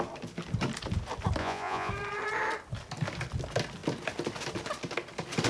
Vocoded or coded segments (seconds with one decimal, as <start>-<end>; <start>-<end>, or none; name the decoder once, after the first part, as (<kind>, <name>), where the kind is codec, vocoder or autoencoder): 1.4-1.9 (vocoder, Vocos)